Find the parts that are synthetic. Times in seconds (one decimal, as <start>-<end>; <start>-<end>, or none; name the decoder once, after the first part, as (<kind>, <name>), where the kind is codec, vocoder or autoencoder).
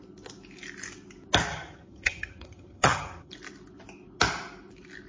1.5-3.3 (vocoder, HiFi-GAN)